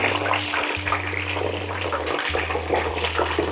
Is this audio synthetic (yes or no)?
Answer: no